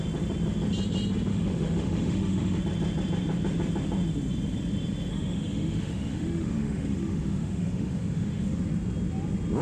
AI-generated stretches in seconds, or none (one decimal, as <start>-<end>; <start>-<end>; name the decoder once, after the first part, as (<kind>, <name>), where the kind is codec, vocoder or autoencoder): 1.3-2.6 (autoencoder, DAC-VAE); 5.1-8.6